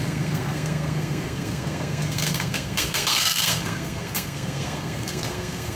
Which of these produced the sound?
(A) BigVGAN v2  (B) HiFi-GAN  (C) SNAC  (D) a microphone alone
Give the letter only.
C